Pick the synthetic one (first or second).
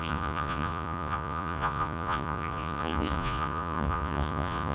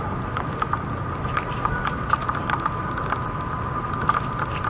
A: first